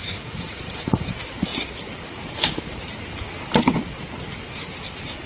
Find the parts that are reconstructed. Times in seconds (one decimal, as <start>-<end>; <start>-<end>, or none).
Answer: 0.0-1.1